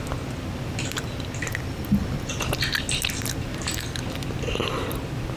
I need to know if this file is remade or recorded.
recorded